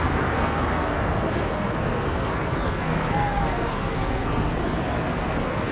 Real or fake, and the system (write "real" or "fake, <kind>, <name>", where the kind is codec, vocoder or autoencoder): fake, codec, SNAC